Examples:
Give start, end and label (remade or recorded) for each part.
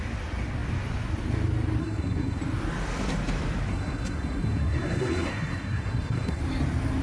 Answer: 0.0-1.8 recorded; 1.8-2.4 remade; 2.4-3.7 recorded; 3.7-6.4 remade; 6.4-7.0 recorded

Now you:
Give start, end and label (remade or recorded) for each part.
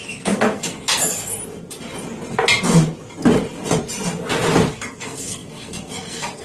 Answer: 0.0-1.4 remade; 1.4-4.7 recorded; 4.7-6.4 remade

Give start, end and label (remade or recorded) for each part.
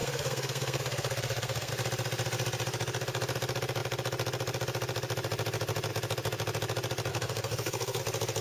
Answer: 0.0-1.7 remade; 1.7-7.1 recorded; 7.1-8.0 remade; 8.0-8.4 recorded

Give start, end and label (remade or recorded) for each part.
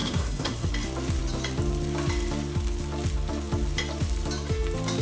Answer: 0.0-0.7 remade; 0.7-5.0 recorded